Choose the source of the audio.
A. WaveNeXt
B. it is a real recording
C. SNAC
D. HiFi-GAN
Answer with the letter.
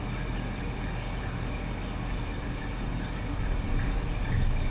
B